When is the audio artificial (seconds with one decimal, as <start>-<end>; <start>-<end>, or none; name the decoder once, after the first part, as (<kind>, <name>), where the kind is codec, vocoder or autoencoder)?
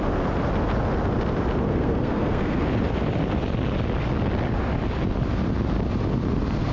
1.7-2.6 (codec, SNAC)